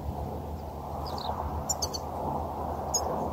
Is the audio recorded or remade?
recorded